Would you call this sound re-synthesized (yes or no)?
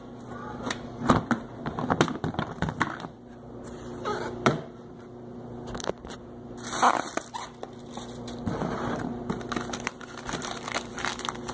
yes